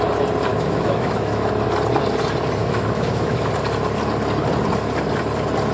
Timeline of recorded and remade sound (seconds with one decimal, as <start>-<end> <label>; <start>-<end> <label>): 0.0-0.5 recorded; 0.5-1.5 remade; 1.5-2.6 recorded; 2.6-3.5 remade; 3.5-5.7 recorded